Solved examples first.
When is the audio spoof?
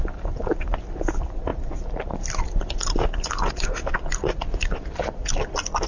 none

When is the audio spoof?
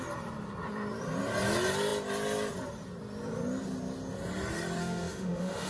4.8-5.7 (autoencoder, DAC-VAE)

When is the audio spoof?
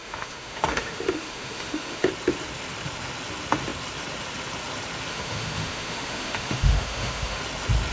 0.0-2.1 (autoencoder, DAC-VAE); 5.1-7.4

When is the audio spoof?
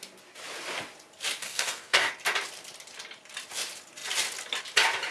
1.4-2.1 (codec, DAC)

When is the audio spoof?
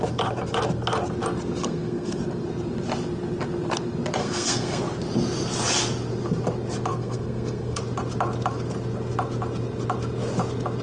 1.6-2.2 (codec, SNAC); 4.2-4.8; 6.9-7.8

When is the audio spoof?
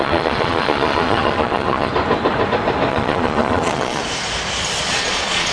0.0-1.9 (vocoder, Vocos); 2.9-4.0; 4.8-5.5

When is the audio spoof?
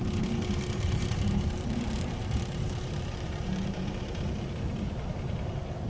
0.0-5.9 (vocoder, BigVGAN v2)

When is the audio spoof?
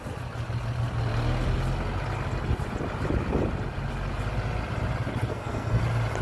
5.3-5.8 (codec, SNAC)